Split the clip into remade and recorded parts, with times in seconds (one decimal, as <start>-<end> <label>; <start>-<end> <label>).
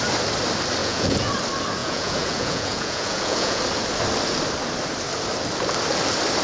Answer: 0.0-0.8 recorded; 0.8-1.3 remade; 1.3-1.8 recorded; 1.8-3.6 remade; 3.6-6.4 recorded